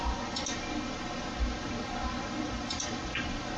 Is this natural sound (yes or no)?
yes